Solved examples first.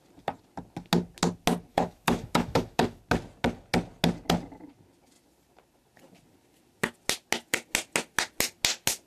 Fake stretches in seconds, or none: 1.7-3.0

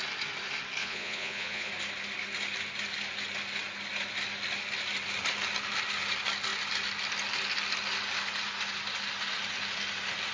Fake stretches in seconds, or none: 0.8-1.7